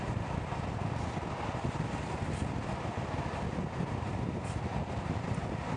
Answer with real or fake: real